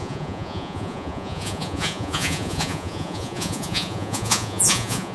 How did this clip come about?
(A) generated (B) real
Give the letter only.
A